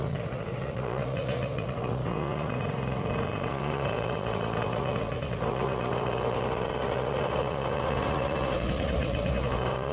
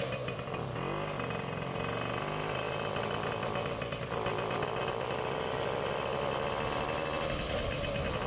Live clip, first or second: second